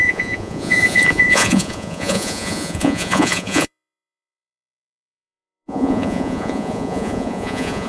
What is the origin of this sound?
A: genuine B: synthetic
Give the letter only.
B